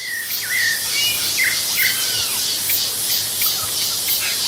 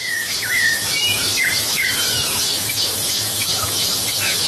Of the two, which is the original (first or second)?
first